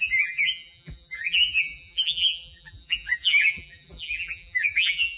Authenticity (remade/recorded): remade